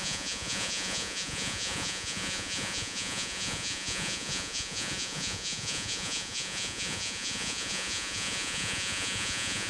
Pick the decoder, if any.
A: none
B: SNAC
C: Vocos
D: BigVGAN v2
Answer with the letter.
C